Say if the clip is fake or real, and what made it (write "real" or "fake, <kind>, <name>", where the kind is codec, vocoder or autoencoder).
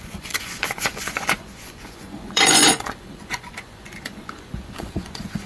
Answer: fake, vocoder, Vocos